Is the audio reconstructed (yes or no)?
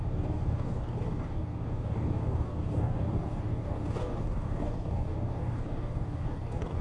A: yes